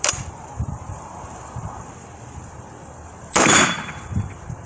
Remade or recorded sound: remade